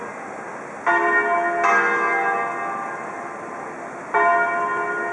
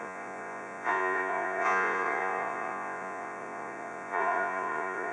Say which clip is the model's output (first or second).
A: second